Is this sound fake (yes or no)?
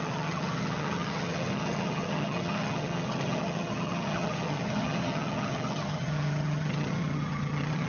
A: yes